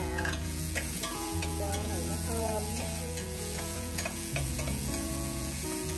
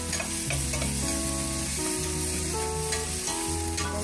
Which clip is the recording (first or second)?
second